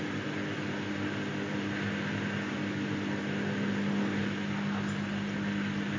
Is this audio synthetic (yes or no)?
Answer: no